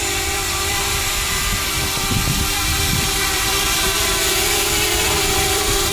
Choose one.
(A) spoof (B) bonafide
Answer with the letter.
A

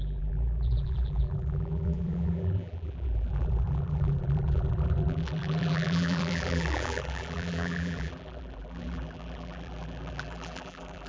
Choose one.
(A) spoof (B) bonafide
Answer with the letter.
A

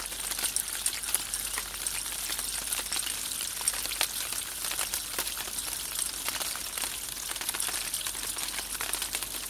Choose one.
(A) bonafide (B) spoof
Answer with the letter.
A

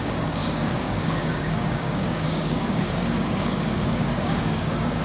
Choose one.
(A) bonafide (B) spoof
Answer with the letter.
B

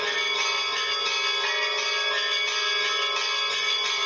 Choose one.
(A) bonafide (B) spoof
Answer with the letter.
A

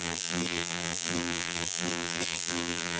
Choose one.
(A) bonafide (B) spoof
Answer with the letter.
B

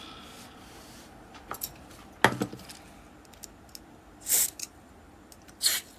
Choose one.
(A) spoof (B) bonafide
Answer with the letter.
B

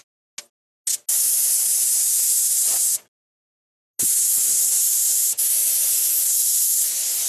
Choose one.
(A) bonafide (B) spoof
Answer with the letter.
A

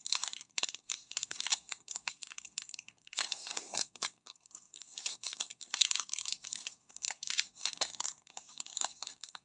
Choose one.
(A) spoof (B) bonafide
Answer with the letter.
A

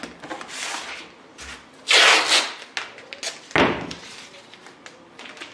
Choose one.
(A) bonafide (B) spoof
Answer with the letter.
A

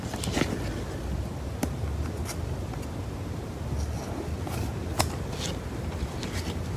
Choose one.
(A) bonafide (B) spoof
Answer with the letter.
A